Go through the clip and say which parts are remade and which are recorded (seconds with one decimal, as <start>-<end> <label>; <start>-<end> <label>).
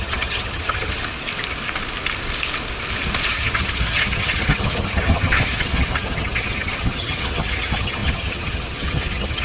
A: 0.0-1.0 remade; 1.0-3.3 recorded; 3.3-9.4 remade